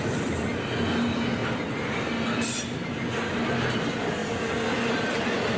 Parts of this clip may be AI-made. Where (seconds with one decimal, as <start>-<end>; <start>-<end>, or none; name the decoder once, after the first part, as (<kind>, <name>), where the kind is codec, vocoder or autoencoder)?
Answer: none